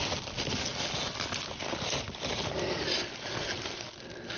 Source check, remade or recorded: recorded